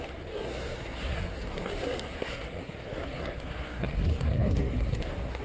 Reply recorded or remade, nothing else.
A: remade